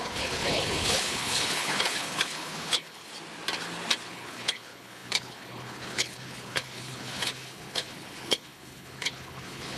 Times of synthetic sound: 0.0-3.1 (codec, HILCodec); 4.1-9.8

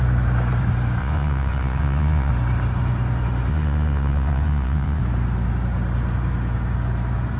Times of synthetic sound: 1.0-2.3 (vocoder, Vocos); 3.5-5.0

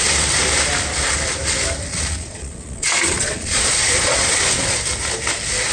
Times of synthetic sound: 1.9-4.8 (vocoder, Vocos)